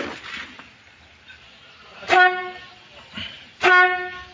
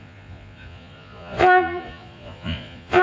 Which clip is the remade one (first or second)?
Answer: second